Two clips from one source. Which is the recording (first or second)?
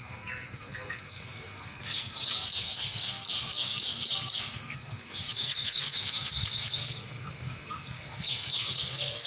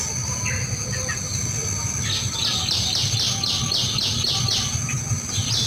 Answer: second